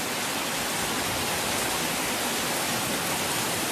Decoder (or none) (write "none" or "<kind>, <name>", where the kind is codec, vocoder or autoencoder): none